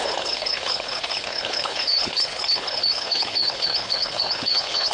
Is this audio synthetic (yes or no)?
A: yes